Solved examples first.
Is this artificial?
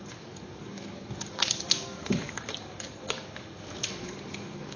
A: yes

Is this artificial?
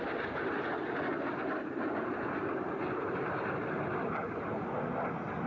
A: no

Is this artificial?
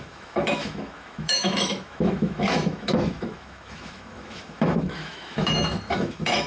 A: yes